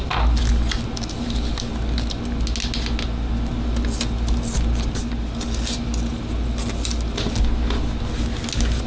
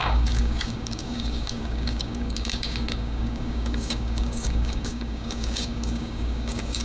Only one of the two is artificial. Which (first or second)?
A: second